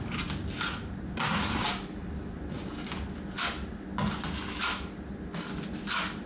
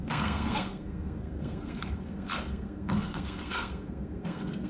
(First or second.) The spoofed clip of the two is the second